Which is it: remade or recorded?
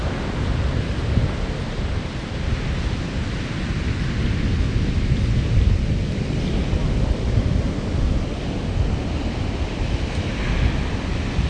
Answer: recorded